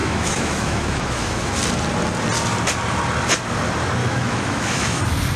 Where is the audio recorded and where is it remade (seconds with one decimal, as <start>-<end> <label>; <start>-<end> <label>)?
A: 0.0-1.5 remade; 1.5-4.0 recorded; 4.0-5.0 remade; 5.0-5.4 recorded